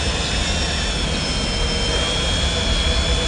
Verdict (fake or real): real